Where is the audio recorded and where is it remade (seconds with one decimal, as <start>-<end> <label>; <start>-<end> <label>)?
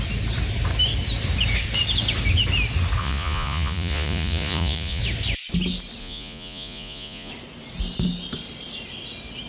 0.0-3.0 recorded; 3.0-5.0 remade; 5.0-6.0 recorded; 6.0-7.3 remade; 7.3-9.5 recorded